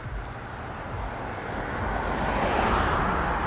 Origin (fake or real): real